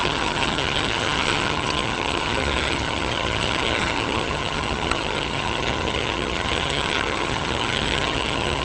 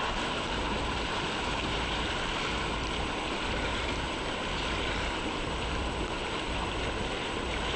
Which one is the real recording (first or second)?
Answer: second